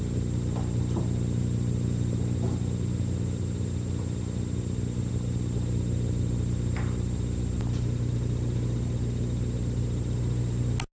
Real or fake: real